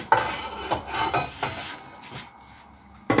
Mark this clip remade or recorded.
recorded